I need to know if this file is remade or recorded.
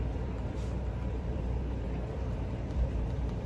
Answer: remade